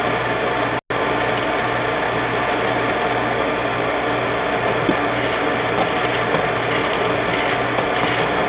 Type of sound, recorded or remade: recorded